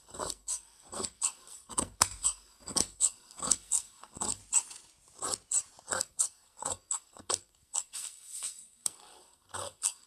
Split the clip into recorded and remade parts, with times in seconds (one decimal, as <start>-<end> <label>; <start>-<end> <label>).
0.0-4.4 remade; 4.4-5.9 recorded; 5.9-10.1 remade